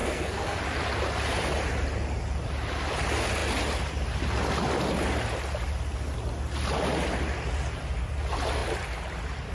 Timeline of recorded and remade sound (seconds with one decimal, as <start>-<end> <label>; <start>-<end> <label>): 0.0-0.6 remade; 0.6-9.5 recorded